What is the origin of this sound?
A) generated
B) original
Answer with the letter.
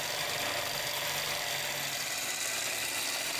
B